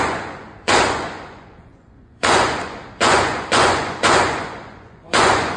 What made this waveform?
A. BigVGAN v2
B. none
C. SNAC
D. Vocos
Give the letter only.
D